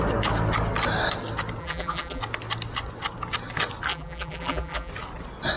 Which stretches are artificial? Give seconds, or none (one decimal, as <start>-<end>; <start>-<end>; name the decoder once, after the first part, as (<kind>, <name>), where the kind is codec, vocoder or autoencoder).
1.6-2.2 (vocoder, BigVGAN v2); 3.9-4.9